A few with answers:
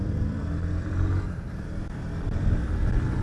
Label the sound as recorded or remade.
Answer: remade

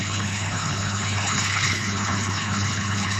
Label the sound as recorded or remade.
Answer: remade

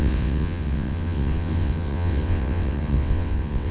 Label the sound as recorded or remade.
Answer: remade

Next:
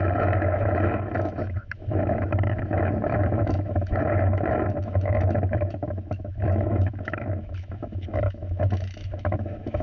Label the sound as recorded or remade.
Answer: remade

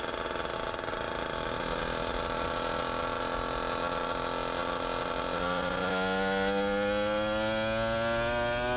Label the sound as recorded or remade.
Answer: recorded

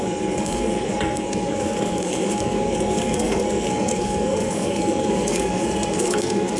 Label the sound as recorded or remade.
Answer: remade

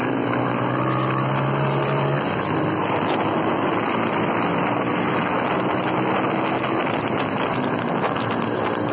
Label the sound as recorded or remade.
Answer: recorded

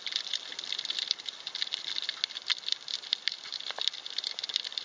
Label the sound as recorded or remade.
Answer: recorded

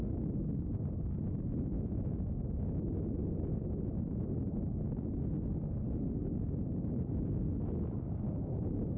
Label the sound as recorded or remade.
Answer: recorded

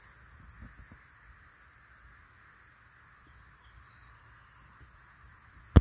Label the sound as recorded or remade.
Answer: recorded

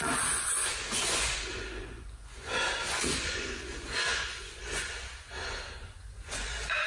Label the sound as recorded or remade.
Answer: remade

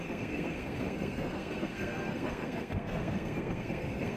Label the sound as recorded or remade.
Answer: remade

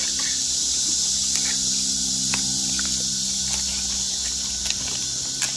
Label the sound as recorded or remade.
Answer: recorded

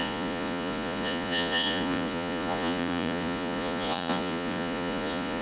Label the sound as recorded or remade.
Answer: remade